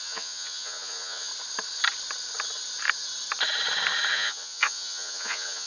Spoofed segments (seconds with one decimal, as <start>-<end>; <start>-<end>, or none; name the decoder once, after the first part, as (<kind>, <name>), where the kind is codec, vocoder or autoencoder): 0.0-1.3 (vocoder, Vocos); 4.1-5.7